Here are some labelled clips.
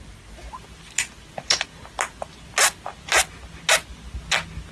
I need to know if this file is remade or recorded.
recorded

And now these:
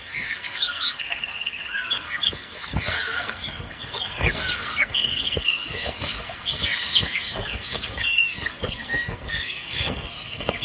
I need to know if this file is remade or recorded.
remade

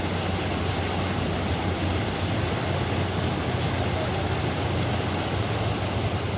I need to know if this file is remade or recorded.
recorded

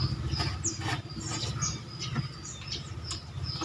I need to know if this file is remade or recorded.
recorded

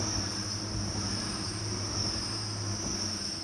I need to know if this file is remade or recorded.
recorded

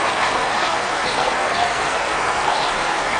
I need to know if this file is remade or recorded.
remade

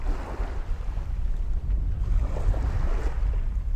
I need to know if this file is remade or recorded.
recorded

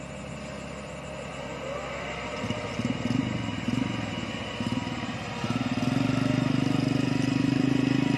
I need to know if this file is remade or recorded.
recorded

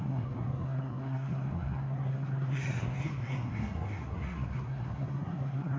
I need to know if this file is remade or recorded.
remade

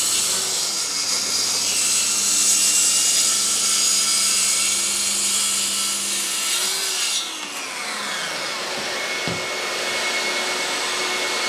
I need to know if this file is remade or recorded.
recorded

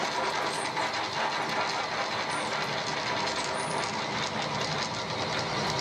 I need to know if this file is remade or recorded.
recorded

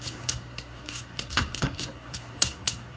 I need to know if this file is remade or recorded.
remade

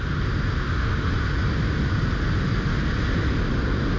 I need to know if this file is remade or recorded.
recorded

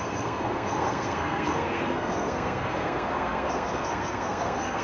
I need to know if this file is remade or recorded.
remade